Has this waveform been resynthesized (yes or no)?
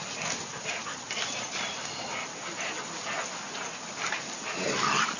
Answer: no